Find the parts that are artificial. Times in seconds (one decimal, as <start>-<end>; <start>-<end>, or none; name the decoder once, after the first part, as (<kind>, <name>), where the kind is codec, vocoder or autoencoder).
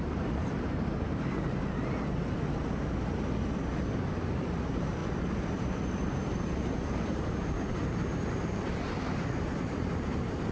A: 0.0-1.8 (vocoder, BigVGAN v2); 4.3-10.5